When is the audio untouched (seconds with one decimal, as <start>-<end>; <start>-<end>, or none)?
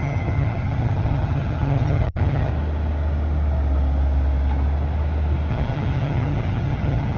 2.5-5.5